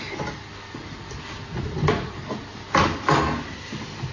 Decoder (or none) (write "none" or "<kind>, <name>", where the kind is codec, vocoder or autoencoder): none